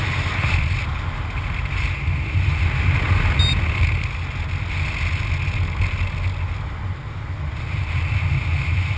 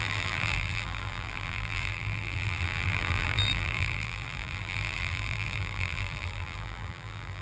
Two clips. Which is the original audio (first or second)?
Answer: first